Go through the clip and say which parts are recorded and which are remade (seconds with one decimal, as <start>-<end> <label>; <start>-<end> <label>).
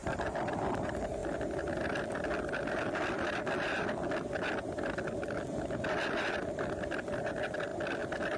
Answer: 0.0-8.4 recorded